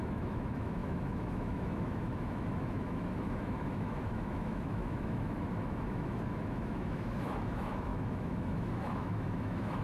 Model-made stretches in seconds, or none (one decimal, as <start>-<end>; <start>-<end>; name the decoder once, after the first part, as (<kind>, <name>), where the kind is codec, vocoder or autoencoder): 0.0-9.8 (autoencoder, DAC-VAE)

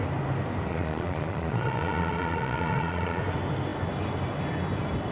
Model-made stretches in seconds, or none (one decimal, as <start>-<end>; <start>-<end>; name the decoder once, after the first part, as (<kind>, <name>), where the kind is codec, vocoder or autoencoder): 0.7-3.2 (vocoder, Vocos)